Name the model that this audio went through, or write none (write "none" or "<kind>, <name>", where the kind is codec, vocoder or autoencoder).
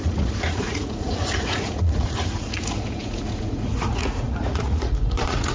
vocoder, Vocos